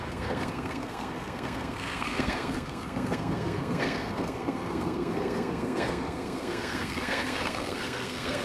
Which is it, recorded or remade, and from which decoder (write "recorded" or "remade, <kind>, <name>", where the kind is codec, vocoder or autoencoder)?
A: remade, codec, SNAC